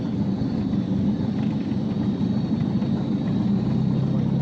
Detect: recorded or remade recorded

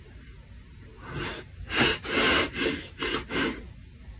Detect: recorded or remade recorded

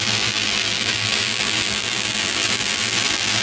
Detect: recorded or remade remade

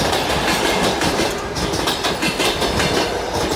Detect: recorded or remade recorded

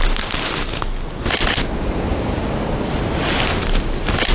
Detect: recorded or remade recorded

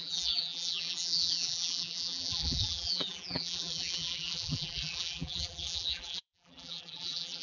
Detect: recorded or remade remade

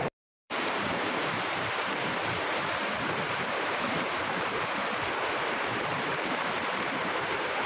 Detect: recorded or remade remade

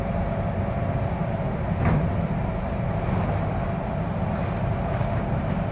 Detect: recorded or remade remade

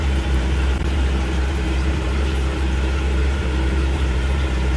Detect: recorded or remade remade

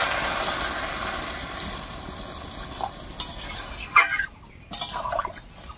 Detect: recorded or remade recorded